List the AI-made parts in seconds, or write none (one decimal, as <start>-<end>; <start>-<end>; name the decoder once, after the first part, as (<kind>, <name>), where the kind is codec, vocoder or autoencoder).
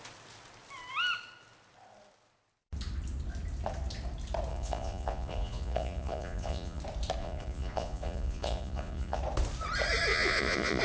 4.5-6.8 (vocoder, Vocos); 7.2-9.2; 10.1-10.8